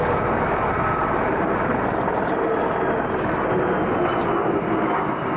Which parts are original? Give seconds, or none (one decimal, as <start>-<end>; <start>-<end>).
0.0-5.4